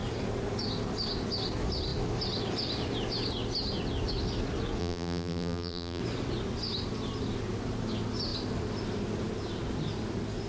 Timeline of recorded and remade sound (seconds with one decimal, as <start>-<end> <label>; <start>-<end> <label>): 0.0-4.8 recorded; 4.8-6.0 remade; 6.0-10.5 recorded